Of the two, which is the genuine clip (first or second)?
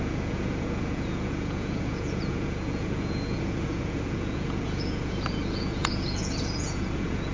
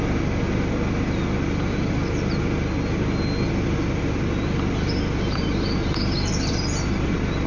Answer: second